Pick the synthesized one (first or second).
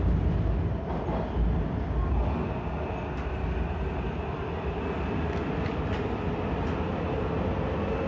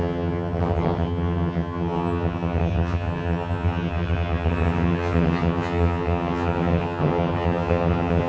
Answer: second